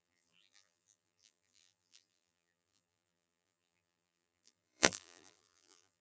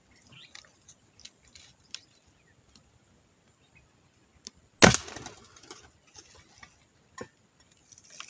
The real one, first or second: second